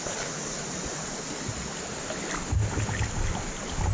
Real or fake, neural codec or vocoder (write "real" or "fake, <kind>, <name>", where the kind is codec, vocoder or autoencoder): real